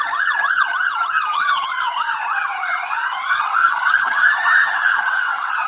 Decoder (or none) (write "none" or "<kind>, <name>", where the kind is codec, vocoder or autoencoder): vocoder, HiFi-GAN